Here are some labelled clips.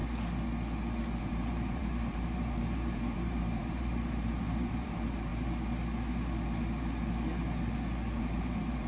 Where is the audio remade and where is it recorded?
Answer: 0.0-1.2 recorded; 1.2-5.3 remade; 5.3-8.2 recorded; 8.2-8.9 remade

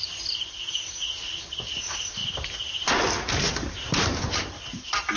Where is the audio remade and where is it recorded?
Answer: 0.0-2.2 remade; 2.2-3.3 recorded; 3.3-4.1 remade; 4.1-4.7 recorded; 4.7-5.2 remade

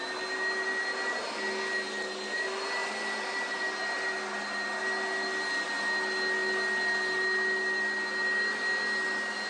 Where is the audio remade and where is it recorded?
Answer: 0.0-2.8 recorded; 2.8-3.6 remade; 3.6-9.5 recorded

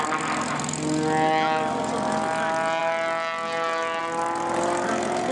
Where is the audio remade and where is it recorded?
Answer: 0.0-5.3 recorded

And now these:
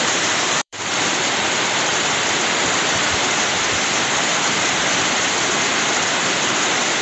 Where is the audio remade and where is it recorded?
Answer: 0.0-1.9 remade; 1.9-6.1 recorded; 6.1-7.0 remade

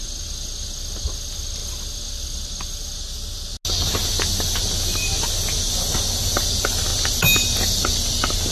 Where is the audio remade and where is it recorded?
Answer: 0.0-8.5 recorded

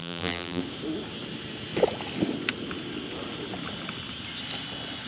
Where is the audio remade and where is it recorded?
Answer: 0.0-0.6 remade; 0.6-5.1 recorded

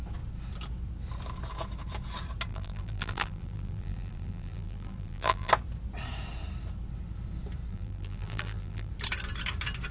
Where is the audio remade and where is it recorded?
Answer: 0.0-2.5 recorded; 2.5-5.5 remade; 5.5-7.7 recorded; 7.7-8.9 remade; 8.9-9.9 recorded